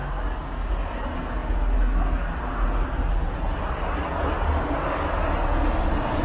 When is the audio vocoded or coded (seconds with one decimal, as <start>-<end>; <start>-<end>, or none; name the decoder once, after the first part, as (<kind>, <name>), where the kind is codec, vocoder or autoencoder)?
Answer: none